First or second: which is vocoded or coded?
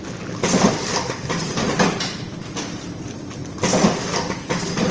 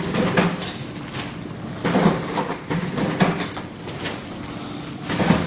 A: first